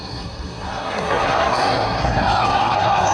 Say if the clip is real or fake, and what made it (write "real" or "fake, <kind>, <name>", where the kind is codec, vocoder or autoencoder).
fake, codec, SNAC